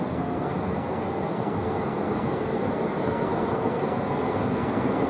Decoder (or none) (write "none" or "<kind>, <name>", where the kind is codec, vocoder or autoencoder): codec, SNAC